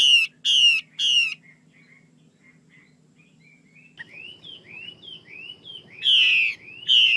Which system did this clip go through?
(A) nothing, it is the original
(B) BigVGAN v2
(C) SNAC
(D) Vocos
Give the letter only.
A